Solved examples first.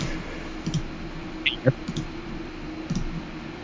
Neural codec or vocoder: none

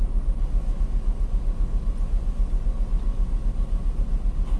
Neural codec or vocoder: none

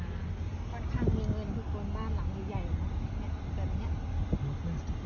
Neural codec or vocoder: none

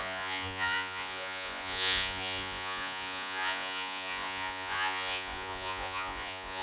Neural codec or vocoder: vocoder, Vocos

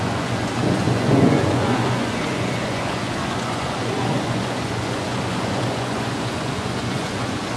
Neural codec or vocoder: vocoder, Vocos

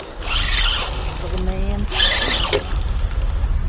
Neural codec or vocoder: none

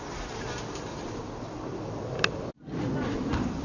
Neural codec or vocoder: none